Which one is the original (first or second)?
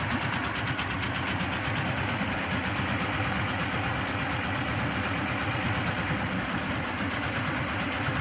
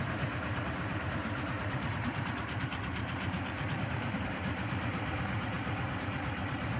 first